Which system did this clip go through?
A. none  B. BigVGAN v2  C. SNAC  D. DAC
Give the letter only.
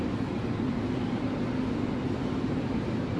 A